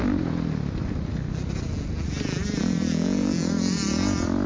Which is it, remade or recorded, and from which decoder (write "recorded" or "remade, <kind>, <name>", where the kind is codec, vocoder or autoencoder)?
recorded